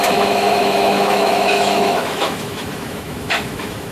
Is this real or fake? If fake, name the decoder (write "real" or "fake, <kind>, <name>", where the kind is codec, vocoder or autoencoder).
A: fake, autoencoder, DAC-VAE